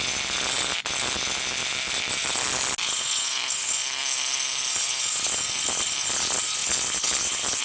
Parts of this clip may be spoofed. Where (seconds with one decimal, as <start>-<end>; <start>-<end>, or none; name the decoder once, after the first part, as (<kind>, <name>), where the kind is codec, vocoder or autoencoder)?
1.6-2.5 (vocoder, BigVGAN v2); 3.8-4.9; 6.6-7.6